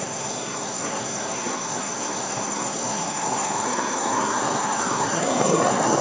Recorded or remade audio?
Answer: remade